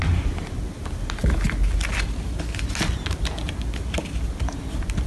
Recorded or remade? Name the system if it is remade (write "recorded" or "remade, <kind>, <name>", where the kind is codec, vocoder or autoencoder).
recorded